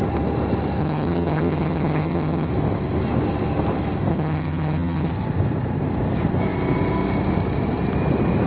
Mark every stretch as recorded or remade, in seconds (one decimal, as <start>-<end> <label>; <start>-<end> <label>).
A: 0.0-0.8 recorded; 0.8-2.5 remade; 2.5-4.1 recorded; 4.1-5.1 remade; 5.1-8.5 recorded